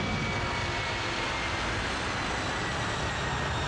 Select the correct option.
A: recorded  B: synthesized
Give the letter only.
A